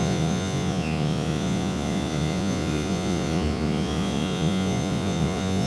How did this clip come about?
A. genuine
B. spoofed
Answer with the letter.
B